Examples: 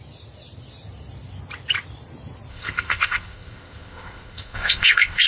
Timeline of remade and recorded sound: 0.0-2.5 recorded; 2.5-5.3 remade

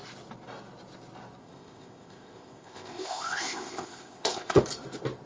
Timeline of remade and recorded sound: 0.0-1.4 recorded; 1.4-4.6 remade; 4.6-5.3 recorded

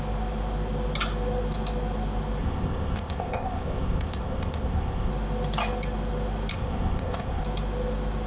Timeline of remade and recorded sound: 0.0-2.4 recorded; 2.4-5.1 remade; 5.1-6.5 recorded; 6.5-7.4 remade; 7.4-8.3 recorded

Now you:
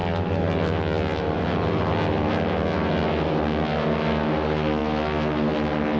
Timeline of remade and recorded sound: 0.0-6.0 recorded

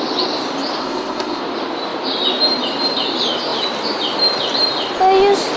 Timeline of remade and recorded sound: 0.0-0.8 recorded; 0.8-1.4 remade; 1.4-5.6 recorded